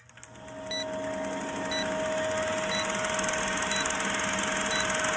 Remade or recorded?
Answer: recorded